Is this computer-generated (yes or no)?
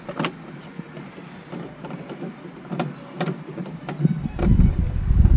no